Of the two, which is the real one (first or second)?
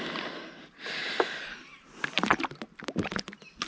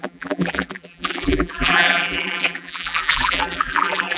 first